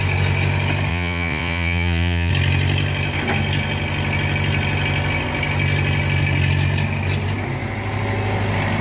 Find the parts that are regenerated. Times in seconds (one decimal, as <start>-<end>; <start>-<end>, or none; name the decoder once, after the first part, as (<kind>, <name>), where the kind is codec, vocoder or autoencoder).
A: 0.9-2.3 (vocoder, Vocos)